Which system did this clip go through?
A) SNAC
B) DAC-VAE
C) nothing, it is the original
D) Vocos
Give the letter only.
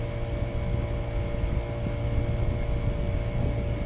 C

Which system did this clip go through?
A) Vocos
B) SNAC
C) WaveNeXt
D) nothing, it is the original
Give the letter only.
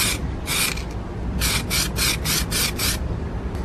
D